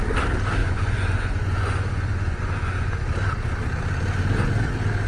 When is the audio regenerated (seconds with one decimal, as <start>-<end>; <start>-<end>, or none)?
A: 0.6-3.0